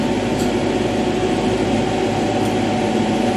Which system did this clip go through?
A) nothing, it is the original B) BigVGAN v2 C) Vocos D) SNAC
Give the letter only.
A